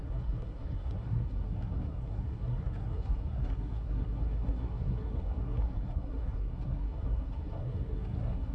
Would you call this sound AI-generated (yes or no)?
yes